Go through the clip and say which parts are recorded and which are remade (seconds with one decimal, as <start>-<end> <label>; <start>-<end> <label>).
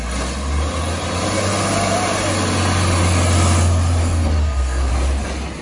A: 0.0-4.0 recorded; 4.0-4.9 remade; 4.9-5.6 recorded